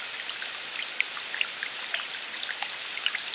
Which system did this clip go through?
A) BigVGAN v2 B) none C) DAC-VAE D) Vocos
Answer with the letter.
B